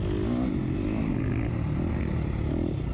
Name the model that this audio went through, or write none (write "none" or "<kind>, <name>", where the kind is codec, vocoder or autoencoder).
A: none